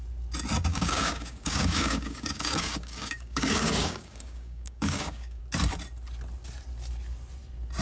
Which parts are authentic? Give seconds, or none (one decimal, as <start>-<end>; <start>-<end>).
0.0-0.7; 5.4-7.8